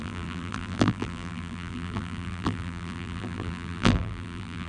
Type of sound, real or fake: fake